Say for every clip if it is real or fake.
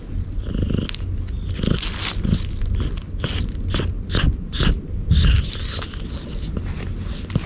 real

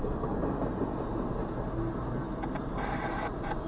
real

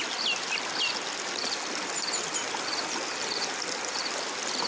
real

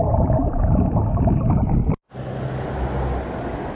real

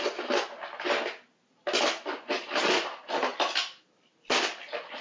real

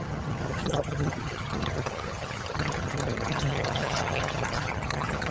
fake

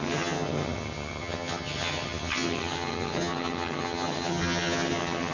fake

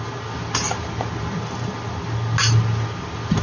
real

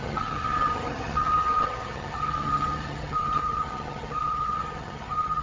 fake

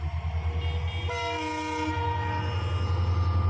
real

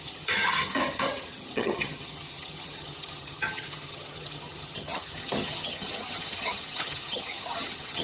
fake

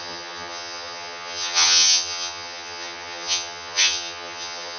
fake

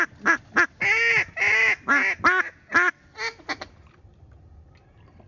real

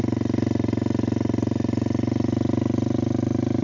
real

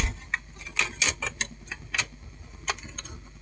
real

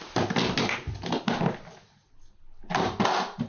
real